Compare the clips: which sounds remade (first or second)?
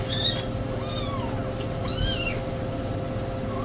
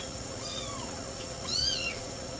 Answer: second